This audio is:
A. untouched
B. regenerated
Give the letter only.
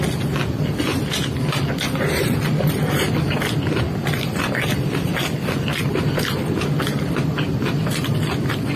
A